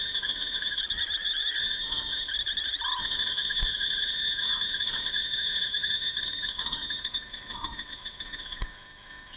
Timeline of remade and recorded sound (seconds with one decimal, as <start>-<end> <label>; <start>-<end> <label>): 0.0-0.8 remade; 0.8-1.6 recorded; 1.6-2.3 remade; 2.3-3.0 recorded; 3.0-9.4 remade